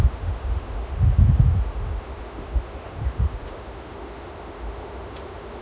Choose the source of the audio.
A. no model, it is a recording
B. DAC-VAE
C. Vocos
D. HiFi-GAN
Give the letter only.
B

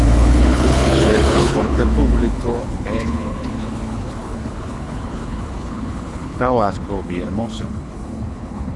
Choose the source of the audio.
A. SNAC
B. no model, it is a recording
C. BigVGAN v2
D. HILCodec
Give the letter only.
D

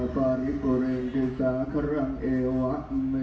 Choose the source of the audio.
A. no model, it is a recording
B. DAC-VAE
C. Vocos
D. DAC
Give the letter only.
A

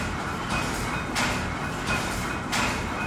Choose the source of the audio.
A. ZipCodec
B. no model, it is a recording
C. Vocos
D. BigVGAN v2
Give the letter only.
B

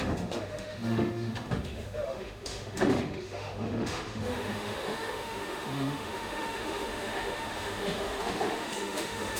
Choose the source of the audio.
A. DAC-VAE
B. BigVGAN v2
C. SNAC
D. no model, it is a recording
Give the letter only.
A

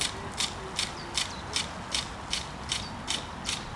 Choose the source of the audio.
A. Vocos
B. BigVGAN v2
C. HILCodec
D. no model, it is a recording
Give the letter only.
D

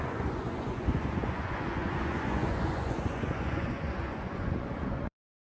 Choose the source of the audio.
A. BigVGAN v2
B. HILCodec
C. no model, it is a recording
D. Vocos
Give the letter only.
D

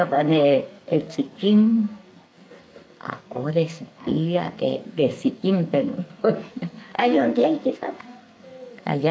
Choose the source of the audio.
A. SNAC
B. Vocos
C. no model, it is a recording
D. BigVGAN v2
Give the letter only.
A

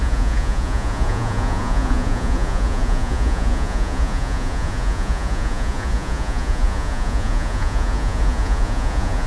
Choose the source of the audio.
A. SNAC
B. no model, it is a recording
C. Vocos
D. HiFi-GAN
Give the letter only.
C